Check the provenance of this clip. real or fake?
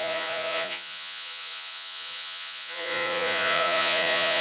fake